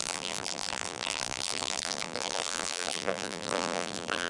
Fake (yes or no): yes